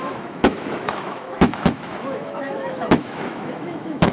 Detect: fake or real fake